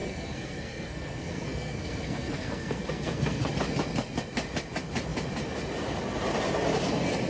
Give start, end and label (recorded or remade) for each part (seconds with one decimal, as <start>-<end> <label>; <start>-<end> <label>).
0.0-3.5 remade; 3.5-7.3 recorded